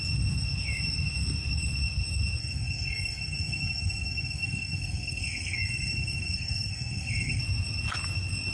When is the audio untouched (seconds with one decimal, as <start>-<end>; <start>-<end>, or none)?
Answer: 0.0-2.4; 7.4-8.5